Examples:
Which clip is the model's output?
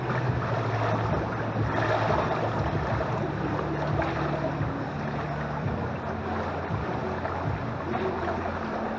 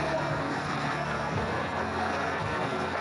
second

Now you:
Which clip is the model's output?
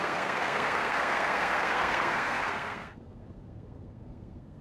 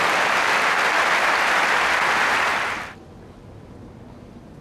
first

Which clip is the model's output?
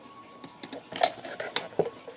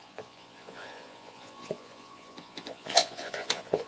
second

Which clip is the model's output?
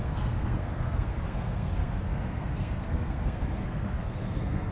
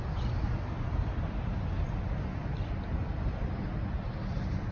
first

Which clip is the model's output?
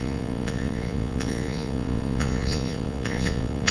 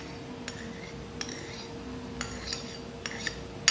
first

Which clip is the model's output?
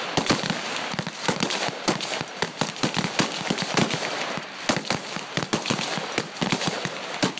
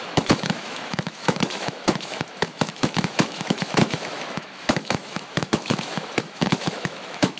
second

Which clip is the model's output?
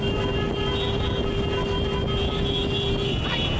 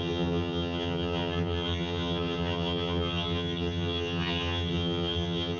second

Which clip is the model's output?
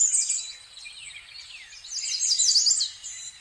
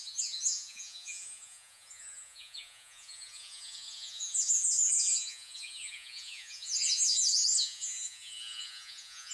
second